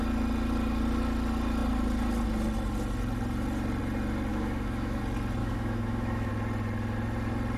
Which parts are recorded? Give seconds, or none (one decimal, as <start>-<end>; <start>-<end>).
0.0-4.3; 5.0-5.4; 6.3-7.6

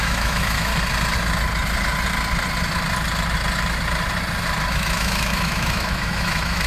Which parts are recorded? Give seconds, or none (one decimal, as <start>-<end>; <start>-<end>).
0.7-4.7

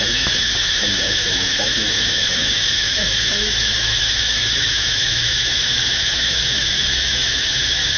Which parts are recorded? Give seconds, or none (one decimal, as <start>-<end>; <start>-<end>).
none

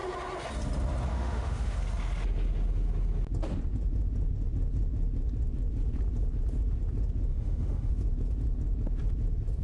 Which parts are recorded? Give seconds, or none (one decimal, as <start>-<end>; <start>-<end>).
0.0-1.1; 1.8-7.3; 7.9-9.6

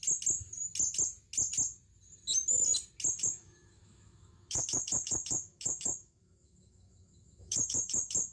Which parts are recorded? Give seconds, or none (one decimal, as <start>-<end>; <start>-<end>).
0.0-3.2